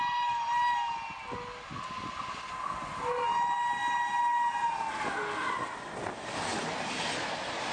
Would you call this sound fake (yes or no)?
no